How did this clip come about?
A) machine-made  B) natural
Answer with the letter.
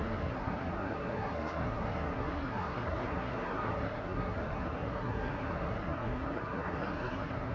A